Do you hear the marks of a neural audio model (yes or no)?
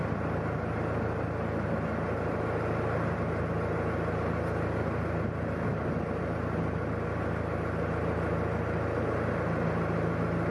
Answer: no